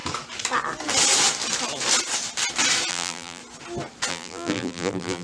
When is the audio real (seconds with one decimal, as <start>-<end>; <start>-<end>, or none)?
0.0-2.9; 3.4-4.1